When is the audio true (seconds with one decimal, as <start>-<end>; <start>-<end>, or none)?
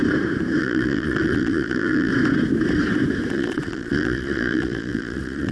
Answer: 0.0-0.6; 2.1-3.3